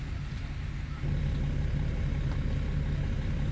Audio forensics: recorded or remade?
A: recorded